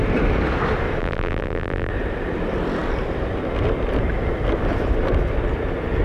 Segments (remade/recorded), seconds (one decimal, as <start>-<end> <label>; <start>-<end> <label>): 0.0-1.0 recorded; 1.0-1.9 remade; 1.9-6.0 recorded